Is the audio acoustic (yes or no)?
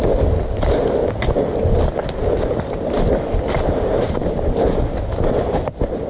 yes